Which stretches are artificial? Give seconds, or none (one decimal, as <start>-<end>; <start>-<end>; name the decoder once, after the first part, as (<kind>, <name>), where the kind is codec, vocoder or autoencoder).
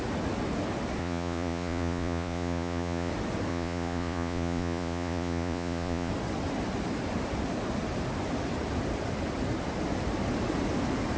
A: 1.0-3.1 (vocoder, Vocos); 3.5-6.1